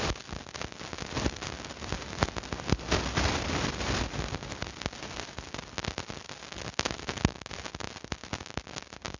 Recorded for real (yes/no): yes